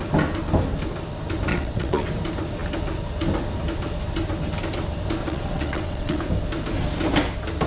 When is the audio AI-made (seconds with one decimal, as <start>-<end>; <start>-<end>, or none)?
1.5-2.1; 5.2-6.2